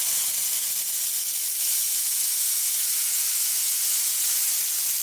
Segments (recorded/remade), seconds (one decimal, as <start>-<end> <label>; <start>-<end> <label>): 0.0-1.6 recorded; 1.6-4.6 remade; 4.6-5.0 recorded